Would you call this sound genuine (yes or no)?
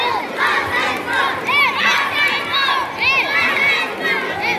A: yes